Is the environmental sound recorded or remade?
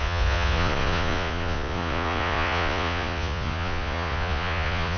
remade